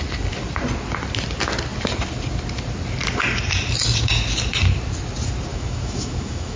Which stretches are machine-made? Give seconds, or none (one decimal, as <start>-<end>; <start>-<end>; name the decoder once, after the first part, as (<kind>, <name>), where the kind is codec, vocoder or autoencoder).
5.5-6.6 (autoencoder, DAC-VAE)